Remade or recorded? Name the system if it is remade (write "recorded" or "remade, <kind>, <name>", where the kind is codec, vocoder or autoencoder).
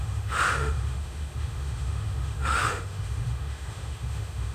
remade, autoencoder, DAC-VAE